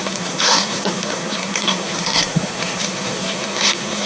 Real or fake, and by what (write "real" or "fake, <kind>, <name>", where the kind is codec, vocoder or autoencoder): fake, codec, SNAC